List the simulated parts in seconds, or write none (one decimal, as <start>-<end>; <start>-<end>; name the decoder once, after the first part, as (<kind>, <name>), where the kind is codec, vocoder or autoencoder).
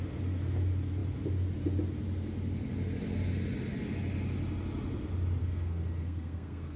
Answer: 5.4-6.8 (codec, SNAC)